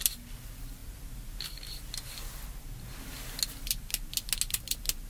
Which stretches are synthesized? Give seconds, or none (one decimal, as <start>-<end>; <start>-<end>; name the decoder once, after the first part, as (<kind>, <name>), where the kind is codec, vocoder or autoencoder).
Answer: none